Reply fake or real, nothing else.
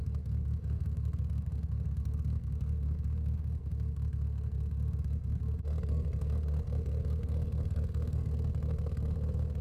fake